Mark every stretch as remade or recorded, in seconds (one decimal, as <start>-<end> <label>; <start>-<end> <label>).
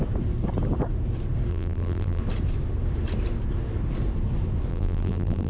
0.0-1.5 recorded; 1.5-2.2 remade; 2.2-4.7 recorded; 4.7-5.5 remade